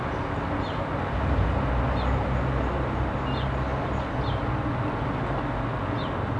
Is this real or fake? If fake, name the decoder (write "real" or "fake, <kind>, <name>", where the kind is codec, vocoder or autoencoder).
real